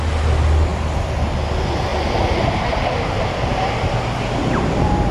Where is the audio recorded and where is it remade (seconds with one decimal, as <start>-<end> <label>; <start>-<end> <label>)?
0.0-5.1 recorded